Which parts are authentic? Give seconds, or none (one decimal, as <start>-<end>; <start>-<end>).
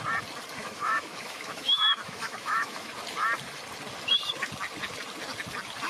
0.0-0.6; 2.9-5.9